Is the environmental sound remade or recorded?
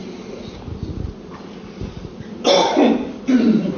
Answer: recorded